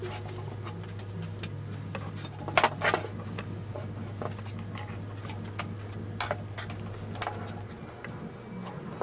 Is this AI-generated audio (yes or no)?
no